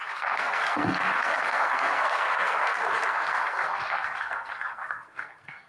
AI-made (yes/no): yes